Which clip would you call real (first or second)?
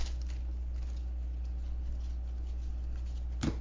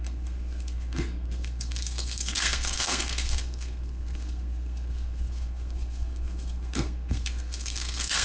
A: first